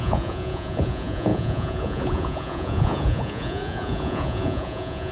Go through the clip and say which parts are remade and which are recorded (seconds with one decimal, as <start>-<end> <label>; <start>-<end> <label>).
0.0-5.1 remade